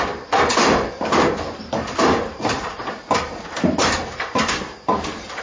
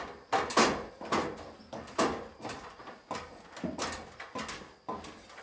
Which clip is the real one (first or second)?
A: second